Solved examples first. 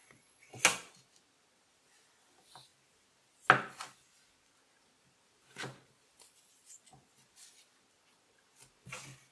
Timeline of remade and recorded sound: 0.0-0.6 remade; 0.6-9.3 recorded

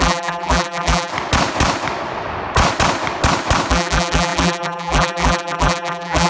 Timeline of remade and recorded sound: 0.0-1.1 remade; 1.1-3.7 recorded; 3.7-6.3 remade

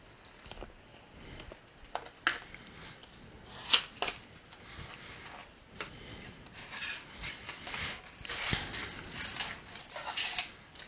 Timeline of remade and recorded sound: 0.0-3.0 recorded; 3.0-3.5 remade; 3.5-5.4 recorded; 5.4-5.9 remade; 5.9-10.9 recorded

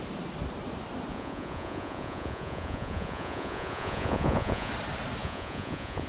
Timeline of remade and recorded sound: 0.0-1.1 recorded; 1.1-4.7 remade; 4.7-5.2 recorded; 5.2-6.1 remade